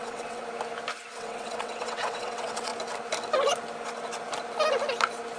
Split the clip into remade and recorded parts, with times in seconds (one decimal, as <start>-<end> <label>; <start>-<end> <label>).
0.0-0.4 remade; 0.4-1.1 recorded; 1.1-2.7 remade; 2.7-5.4 recorded